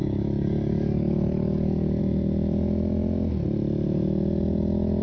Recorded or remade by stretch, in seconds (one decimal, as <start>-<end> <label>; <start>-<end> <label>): 0.0-2.0 remade; 2.0-5.0 recorded